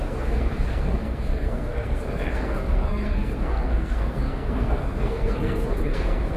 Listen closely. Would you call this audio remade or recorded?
remade